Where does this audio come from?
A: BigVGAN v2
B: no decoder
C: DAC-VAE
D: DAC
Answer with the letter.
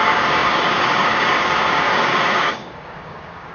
D